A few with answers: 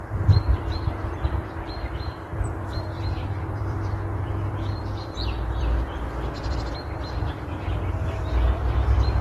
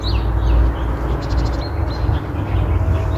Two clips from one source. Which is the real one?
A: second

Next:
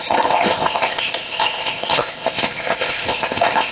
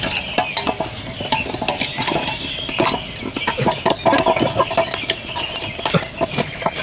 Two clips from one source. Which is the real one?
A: second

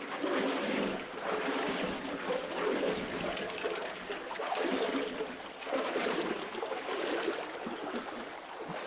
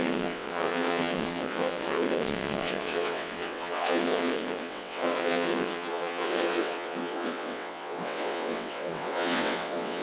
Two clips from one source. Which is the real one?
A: first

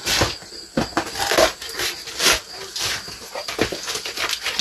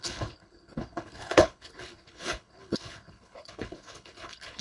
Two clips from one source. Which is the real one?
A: first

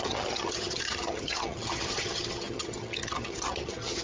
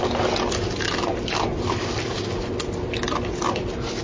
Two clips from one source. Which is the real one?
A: second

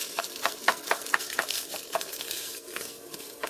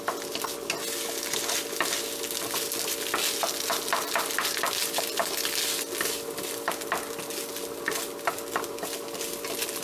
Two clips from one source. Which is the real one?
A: second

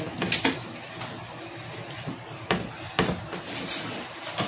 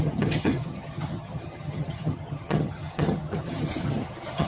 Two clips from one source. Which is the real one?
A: first